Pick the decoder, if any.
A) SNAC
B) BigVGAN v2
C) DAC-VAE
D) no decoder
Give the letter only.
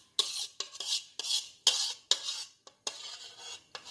D